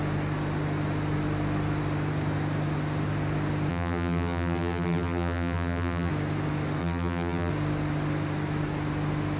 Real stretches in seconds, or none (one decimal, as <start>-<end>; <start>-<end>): 0.0-3.7; 6.1-6.8; 7.5-9.4